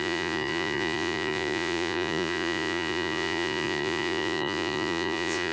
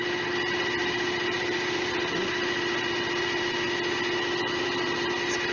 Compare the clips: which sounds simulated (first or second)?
first